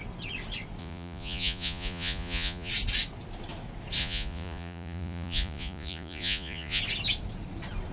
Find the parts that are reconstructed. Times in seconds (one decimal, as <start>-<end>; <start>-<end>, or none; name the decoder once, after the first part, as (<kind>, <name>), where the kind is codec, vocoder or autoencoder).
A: 0.8-2.7 (vocoder, Vocos); 4.0-6.8

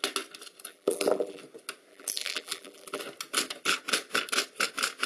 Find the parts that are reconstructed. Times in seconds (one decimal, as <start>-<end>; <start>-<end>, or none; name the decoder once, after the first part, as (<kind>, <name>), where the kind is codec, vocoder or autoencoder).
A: 0.7-1.4 (vocoder, BigVGAN v2); 1.9-3.0

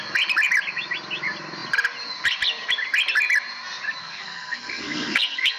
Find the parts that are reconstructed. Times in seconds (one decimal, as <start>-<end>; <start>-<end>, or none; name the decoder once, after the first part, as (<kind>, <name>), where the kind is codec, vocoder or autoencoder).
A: 4.0-5.6 (codec, SNAC)

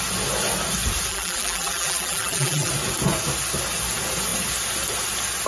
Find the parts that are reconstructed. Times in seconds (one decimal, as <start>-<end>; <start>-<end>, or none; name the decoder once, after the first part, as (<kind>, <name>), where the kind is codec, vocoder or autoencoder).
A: 1.1-2.7 (vocoder, BigVGAN v2)

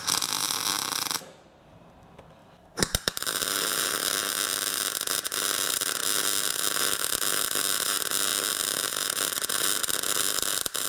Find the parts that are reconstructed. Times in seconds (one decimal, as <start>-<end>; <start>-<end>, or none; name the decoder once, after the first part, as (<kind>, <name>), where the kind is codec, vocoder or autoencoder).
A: 2.4-4.0 (vocoder, BigVGAN v2)